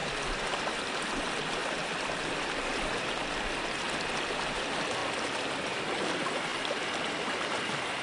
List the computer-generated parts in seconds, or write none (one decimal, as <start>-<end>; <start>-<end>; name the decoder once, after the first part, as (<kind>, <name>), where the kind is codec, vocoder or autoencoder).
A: 0.0-1.2 (vocoder, BigVGAN v2); 1.6-3.3